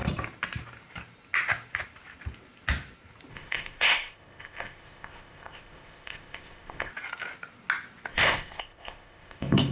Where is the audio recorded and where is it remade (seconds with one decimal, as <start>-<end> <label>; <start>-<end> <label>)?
0.0-3.3 recorded; 3.3-6.9 remade; 6.9-8.1 recorded; 8.1-9.7 remade

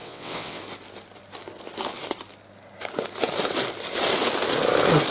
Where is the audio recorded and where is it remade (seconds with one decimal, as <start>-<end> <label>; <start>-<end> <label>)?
0.0-0.6 remade; 0.6-5.1 recorded